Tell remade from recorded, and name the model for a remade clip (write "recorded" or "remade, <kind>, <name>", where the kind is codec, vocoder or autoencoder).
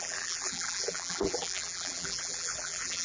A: remade, vocoder, BigVGAN v2